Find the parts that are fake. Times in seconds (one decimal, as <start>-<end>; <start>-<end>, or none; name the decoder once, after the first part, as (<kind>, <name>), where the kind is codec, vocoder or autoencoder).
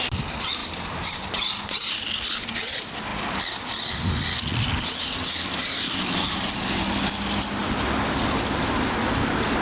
0.6-1.8 (vocoder, BigVGAN v2); 5.6-6.6